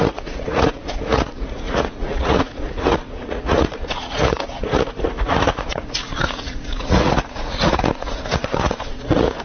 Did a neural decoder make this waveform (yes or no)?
yes